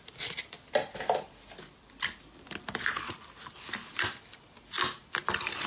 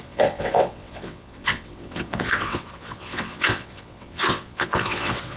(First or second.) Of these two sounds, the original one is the first